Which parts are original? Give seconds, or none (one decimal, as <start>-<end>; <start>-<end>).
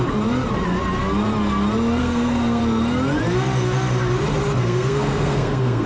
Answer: 0.0-2.0; 2.6-4.6